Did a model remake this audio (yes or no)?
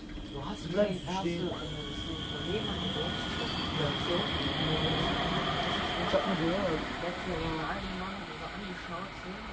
no